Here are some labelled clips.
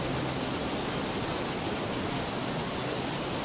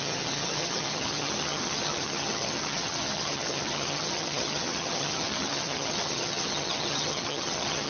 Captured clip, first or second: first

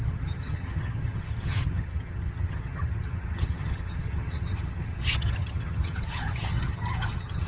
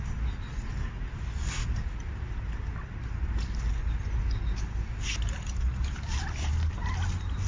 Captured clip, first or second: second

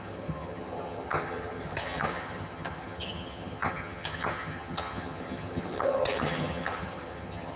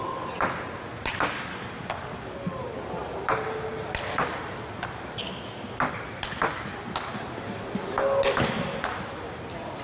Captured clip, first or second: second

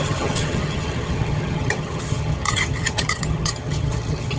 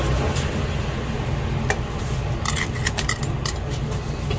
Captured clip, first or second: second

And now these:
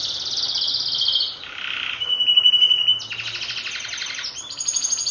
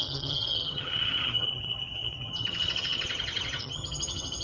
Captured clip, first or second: first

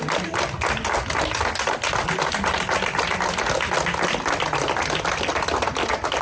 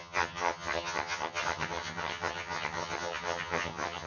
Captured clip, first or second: first